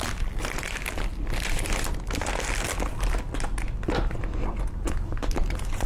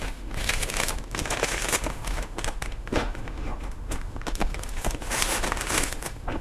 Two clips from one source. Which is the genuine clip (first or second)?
first